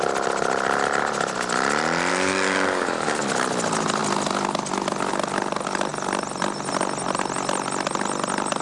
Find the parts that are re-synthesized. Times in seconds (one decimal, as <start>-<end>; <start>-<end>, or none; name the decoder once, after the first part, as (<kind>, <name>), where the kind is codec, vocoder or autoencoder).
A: 2.1-3.2 (codec, DAC)